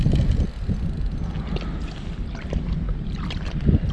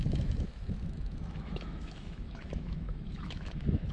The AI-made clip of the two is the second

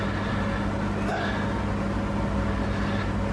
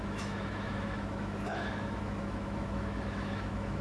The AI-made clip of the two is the second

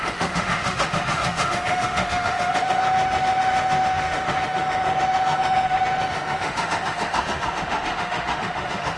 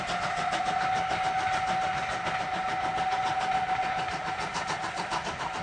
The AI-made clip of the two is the first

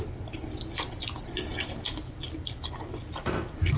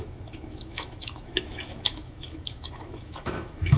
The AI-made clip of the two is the second